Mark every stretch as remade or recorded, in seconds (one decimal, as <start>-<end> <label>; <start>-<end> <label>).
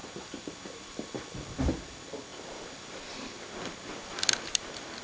0.0-5.0 remade